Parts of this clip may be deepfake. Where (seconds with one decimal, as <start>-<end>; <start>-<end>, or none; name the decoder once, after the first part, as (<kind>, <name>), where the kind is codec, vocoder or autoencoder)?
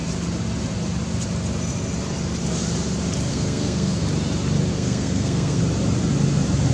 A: 3.3-4.0 (codec, SNAC); 4.7-5.6